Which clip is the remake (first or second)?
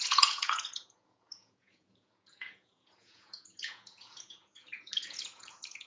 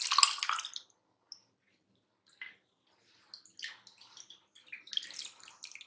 first